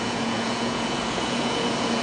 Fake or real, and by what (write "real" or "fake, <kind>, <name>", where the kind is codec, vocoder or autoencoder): fake, vocoder, Vocos